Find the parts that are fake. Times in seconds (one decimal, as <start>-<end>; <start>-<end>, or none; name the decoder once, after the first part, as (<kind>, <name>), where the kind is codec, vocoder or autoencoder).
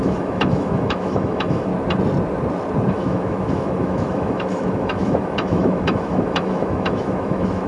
0.0-1.7 (autoencoder, DAC-VAE); 2.9-7.7